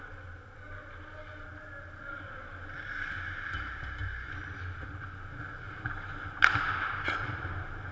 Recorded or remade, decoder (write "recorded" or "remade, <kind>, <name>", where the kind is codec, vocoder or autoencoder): recorded